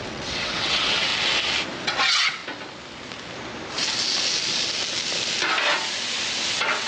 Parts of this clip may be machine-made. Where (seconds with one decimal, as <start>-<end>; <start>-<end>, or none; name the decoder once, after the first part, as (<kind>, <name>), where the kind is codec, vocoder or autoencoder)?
0.0-1.1 (vocoder, WaveNeXt); 1.8-2.4; 6.5-6.9